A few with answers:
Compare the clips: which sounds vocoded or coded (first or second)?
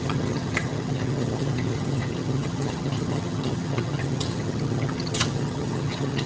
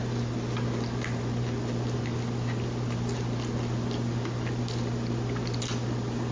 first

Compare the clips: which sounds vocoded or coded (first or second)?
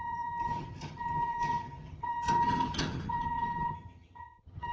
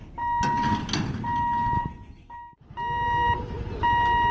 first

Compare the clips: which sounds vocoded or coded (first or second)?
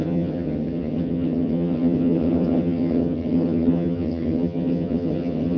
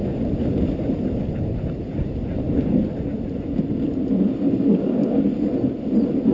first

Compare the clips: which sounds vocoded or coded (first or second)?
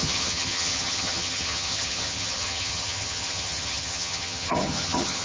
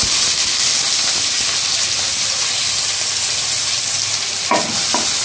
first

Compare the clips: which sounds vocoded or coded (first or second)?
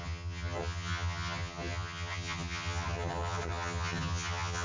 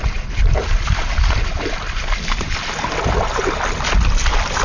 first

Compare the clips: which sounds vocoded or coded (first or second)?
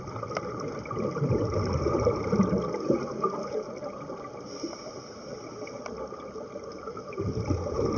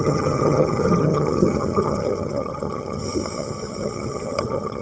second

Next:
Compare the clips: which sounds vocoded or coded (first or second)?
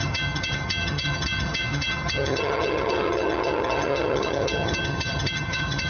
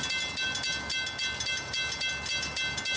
first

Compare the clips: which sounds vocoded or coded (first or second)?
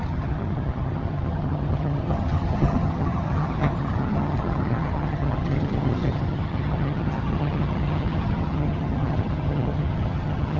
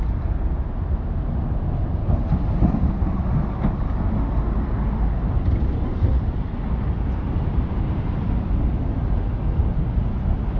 first